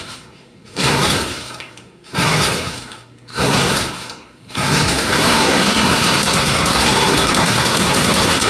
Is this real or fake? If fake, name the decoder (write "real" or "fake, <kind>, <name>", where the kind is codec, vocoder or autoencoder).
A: fake, codec, SNAC